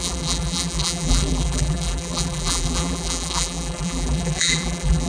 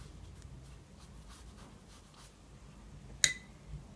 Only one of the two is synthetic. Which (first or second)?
first